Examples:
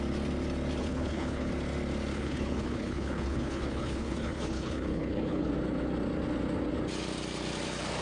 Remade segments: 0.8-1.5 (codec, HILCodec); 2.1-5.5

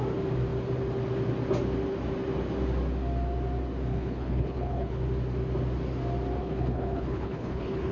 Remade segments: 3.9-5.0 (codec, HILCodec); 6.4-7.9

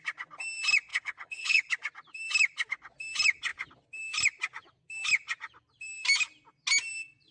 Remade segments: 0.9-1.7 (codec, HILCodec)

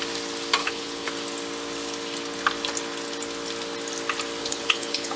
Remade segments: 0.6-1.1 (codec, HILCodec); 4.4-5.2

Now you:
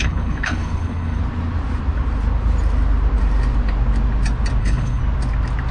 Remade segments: 0.0-1.2 (codec, HILCodec); 4.6-5.0